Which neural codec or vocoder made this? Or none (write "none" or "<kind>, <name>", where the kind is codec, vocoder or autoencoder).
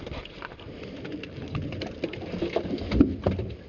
none